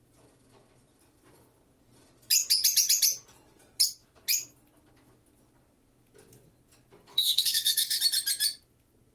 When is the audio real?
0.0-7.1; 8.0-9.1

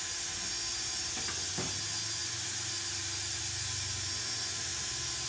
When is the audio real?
0.0-2.2; 3.4-5.3